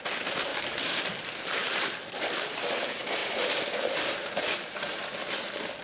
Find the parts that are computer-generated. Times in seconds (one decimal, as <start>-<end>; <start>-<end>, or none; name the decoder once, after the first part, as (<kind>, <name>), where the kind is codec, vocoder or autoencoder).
0.5-2.6 (vocoder, BigVGAN v2); 3.2-4.7